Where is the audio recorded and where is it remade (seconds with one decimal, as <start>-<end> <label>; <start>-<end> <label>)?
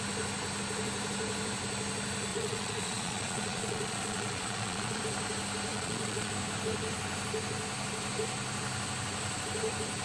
0.0-2.3 recorded; 2.3-5.0 remade; 5.0-5.7 recorded; 5.7-6.3 remade; 6.3-10.0 recorded